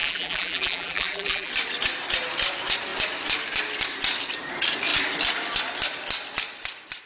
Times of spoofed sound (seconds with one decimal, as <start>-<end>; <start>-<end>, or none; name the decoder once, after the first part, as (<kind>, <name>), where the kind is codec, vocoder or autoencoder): 0.0-1.5 (vocoder, BigVGAN v2)